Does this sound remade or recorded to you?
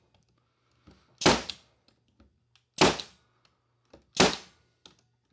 recorded